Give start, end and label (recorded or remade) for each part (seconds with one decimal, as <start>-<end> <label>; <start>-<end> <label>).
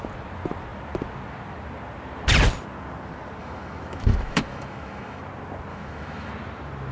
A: 0.0-3.4 recorded; 3.4-5.2 remade; 5.2-5.7 recorded; 5.7-6.3 remade; 6.3-6.9 recorded